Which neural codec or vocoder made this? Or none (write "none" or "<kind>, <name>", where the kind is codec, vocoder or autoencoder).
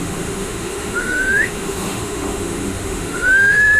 autoencoder, DAC-VAE